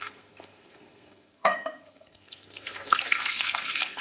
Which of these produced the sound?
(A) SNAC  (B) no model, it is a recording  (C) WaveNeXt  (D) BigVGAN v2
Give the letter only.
A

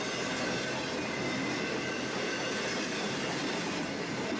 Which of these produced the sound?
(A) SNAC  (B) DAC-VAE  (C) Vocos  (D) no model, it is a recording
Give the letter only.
D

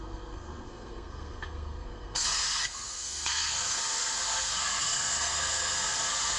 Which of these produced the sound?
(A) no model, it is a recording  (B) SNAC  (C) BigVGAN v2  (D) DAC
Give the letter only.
B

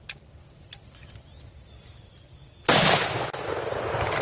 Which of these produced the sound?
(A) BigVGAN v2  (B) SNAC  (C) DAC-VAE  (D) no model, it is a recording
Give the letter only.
D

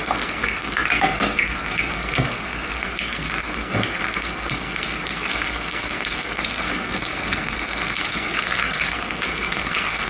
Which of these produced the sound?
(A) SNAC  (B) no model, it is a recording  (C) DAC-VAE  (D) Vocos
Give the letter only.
A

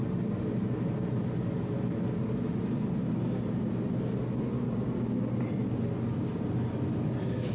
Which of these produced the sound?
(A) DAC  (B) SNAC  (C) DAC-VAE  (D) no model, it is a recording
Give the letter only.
D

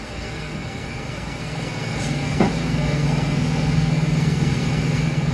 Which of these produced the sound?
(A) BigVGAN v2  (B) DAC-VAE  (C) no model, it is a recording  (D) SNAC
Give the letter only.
D